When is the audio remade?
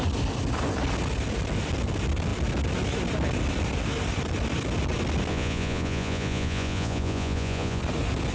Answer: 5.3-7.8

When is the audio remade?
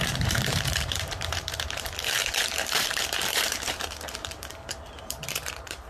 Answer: 0.0-5.9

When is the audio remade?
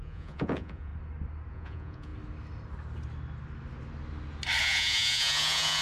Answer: 0.0-0.9; 1.5-2.1; 4.6-5.8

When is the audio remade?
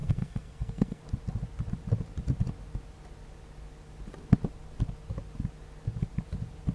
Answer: 0.0-1.0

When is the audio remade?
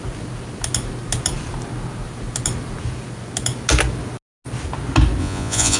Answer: 5.2-5.8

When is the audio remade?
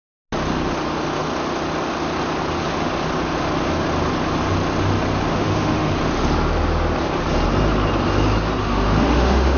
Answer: 5.3-5.9; 8.6-9.6